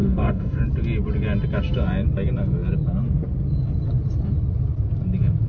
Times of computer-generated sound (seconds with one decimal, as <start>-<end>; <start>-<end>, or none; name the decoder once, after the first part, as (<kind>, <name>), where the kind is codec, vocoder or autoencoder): 0.0-0.6 (autoencoder, DAC-VAE)